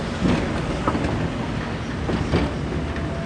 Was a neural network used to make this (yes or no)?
no